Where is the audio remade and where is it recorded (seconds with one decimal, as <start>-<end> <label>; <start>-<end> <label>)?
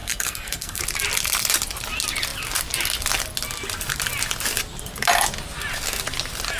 0.0-0.8 remade; 0.8-6.6 recorded